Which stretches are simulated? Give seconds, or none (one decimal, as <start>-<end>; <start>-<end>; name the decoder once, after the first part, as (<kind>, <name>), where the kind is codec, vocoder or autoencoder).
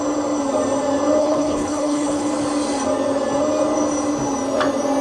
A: 1.2-2.3 (codec, HILCodec)